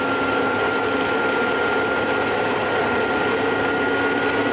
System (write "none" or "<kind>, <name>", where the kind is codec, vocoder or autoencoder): none